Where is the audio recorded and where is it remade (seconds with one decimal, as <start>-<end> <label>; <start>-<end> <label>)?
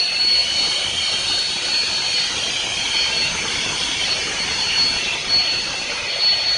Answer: 0.0-6.6 recorded